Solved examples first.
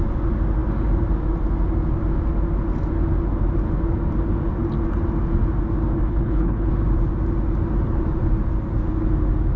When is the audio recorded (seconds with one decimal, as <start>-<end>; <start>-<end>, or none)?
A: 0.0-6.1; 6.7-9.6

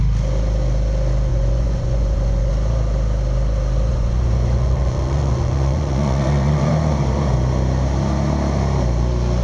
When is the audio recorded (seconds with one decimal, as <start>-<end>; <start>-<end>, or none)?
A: 0.0-1.3; 2.5-3.9; 6.7-9.4

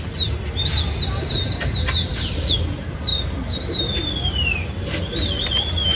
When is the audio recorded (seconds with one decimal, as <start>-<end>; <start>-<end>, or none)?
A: 0.0-2.1; 2.6-5.9

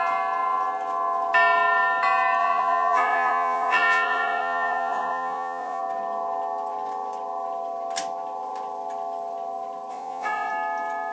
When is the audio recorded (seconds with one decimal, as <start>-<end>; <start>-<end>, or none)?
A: 0.0-2.4; 5.8-9.9; 10.5-11.1